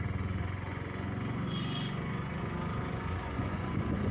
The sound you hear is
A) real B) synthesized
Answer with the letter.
B